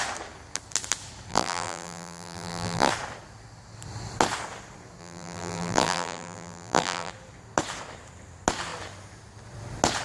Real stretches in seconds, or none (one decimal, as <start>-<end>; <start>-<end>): 0.0-1.3; 2.9-5.0; 7.1-10.0